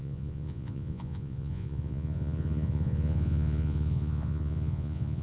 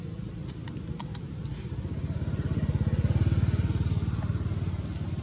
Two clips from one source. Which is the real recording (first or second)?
second